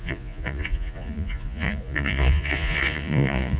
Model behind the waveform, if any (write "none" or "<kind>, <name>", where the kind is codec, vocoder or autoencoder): vocoder, Vocos